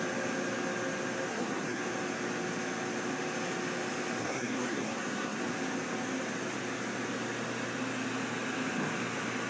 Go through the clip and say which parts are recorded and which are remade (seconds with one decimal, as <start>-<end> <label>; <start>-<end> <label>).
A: 0.0-1.3 recorded; 1.3-1.8 remade; 1.8-4.2 recorded; 4.2-5.4 remade; 5.4-9.5 recorded